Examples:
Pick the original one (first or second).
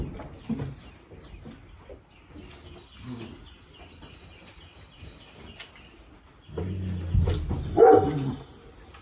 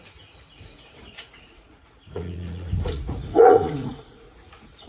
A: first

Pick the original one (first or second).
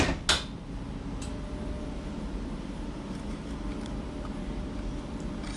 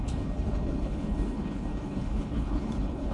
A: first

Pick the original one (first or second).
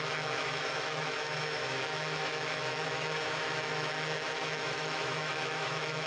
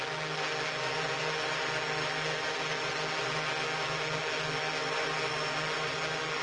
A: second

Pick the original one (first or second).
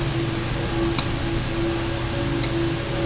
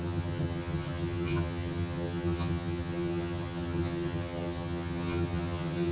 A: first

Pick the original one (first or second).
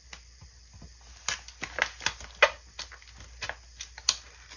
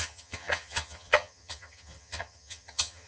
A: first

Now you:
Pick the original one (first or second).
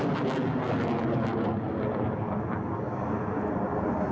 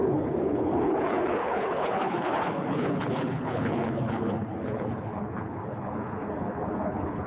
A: first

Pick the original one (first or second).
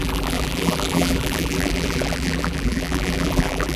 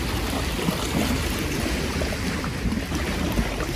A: second